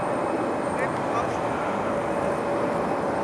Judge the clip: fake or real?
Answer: real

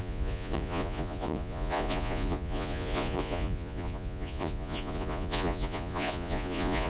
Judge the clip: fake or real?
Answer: fake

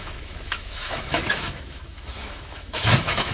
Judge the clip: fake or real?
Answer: fake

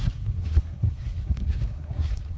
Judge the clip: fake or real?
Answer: fake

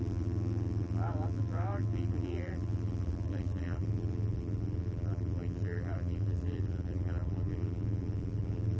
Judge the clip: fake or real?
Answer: fake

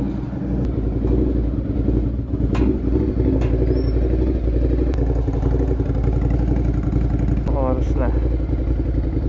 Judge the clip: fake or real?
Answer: real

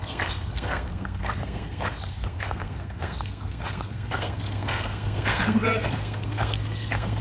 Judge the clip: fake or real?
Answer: fake